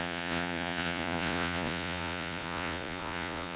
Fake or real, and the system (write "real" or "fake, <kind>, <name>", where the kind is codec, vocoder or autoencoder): fake, vocoder, Vocos